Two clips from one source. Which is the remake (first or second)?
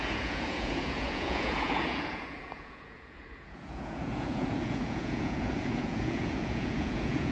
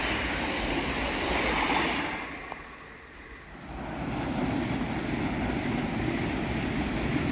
first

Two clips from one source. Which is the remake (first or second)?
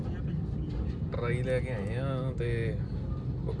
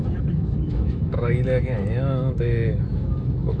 second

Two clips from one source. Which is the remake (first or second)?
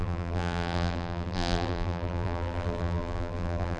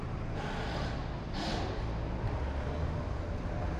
first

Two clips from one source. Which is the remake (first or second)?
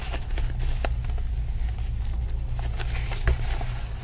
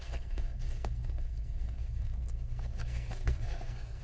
second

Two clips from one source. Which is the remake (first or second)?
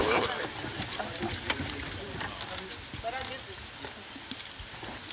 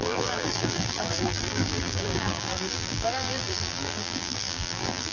second